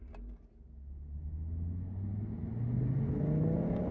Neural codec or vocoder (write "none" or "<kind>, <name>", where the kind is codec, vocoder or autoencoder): none